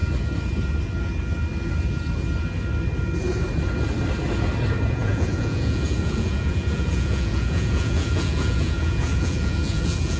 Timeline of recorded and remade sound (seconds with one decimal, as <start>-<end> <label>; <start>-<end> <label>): 0.0-4.9 recorded; 4.9-10.2 remade